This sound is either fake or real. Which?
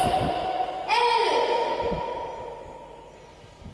real